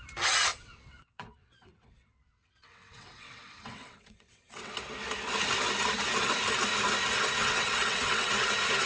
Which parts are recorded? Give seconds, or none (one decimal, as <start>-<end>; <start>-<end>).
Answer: 0.0-0.5; 4.7-7.4; 8.3-8.9